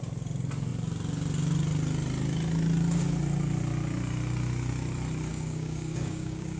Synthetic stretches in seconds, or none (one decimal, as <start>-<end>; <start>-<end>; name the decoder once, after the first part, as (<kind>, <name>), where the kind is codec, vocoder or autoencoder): 5.3-6.6 (codec, DAC)

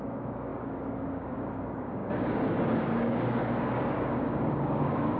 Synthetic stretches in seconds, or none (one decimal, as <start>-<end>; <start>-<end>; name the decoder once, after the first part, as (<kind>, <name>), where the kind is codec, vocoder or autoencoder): 0.0-5.2 (codec, DAC)

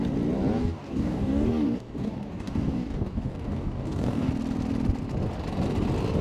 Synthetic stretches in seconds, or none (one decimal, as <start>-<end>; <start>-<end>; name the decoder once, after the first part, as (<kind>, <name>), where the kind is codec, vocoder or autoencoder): 0.6-4.3 (codec, DAC)

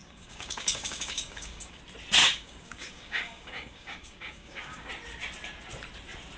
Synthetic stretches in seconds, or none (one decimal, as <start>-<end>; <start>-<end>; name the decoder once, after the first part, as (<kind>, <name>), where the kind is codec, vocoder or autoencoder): 0.0-1.8 (codec, DAC); 2.2-4.9

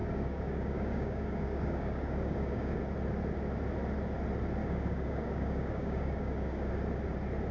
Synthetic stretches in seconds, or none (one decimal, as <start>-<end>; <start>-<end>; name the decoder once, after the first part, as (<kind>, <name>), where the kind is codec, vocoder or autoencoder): 0.0-2.8 (codec, DAC); 4.6-6.7

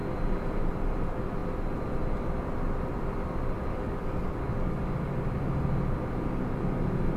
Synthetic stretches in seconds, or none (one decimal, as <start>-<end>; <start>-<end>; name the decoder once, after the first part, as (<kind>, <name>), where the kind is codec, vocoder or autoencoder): 3.7-4.9 (codec, DAC)